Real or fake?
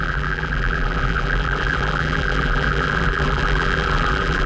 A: fake